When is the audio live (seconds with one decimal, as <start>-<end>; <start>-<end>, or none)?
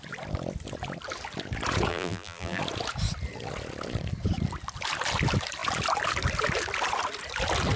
0.0-1.9; 2.6-7.8